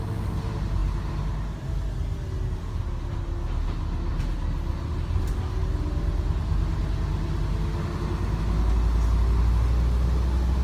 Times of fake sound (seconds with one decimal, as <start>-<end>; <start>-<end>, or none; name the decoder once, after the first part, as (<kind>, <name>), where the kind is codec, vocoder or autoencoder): none